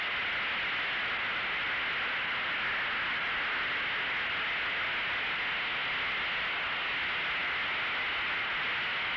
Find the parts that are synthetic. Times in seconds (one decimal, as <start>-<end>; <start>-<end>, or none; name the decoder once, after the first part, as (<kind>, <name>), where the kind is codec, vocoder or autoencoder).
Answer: none